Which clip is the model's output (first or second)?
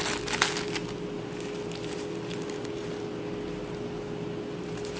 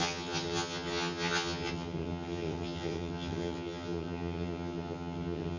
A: second